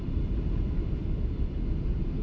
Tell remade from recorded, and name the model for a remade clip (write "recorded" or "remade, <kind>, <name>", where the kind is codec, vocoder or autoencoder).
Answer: recorded